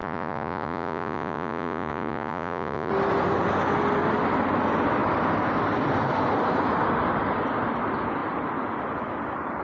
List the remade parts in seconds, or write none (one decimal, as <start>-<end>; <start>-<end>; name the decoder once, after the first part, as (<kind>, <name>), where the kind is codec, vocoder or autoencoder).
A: 0.0-2.9 (vocoder, Vocos)